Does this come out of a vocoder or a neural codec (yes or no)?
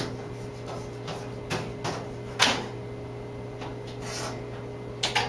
no